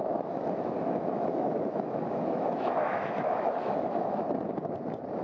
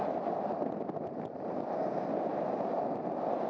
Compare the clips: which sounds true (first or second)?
second